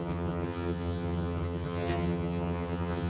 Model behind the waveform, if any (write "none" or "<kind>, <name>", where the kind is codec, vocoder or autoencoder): vocoder, HiFi-GAN